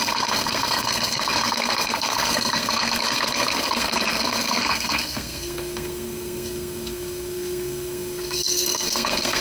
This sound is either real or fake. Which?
fake